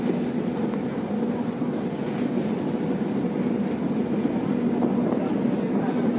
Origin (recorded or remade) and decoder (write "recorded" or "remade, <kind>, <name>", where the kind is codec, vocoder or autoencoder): recorded